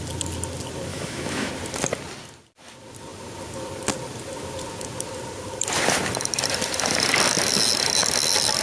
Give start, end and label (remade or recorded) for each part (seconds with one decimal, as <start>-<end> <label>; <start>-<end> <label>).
0.0-0.9 recorded; 0.9-1.5 remade; 1.5-8.6 recorded